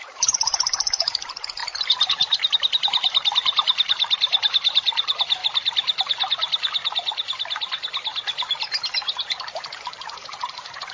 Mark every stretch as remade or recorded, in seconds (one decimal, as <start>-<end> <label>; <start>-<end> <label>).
0.0-5.4 remade; 5.4-9.8 recorded; 9.8-10.9 remade